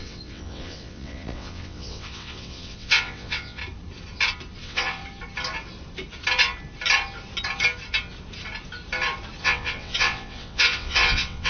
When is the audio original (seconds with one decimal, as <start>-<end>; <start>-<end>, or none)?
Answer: 3.6-4.6; 5.0-9.4